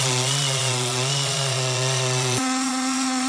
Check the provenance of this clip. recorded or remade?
remade